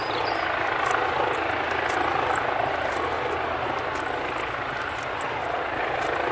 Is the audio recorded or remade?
recorded